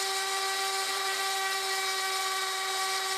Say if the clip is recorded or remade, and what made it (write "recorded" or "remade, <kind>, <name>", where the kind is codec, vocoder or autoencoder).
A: recorded